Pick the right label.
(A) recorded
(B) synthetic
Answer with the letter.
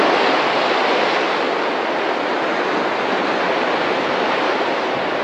A